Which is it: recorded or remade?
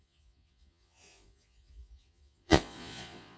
remade